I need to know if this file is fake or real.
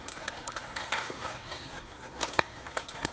fake